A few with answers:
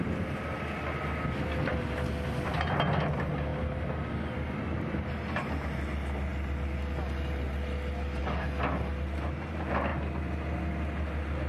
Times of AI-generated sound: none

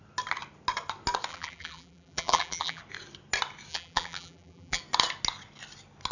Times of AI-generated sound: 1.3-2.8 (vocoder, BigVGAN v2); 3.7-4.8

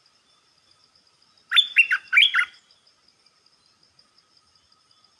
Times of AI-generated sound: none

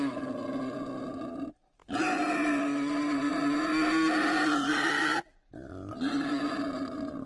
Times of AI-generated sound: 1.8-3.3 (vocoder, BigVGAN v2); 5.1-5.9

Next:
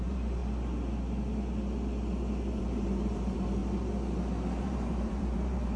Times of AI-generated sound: 0.0-0.4 (vocoder, BigVGAN v2); 2.6-3.6; 4.6-5.8

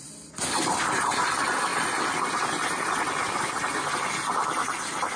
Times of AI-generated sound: none

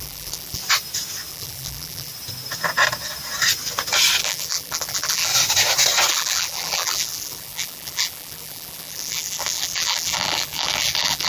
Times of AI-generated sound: 0.0-0.6 (vocoder, BigVGAN v2); 1.3-2.1; 4.2-5.3; 6.1-11.3